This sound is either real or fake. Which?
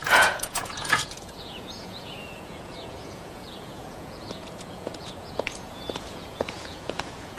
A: fake